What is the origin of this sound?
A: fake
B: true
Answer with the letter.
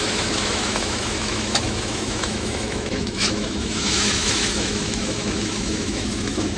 A